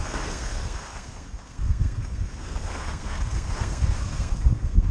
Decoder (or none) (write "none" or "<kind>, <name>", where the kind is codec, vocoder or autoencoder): codec, SNAC